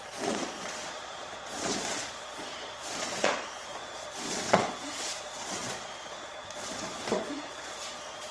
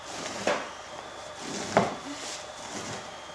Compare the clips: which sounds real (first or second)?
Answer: second